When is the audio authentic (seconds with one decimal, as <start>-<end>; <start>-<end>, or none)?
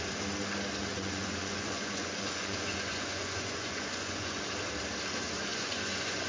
0.0-0.9; 4.4-5.5